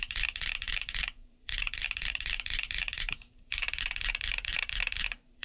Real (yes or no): no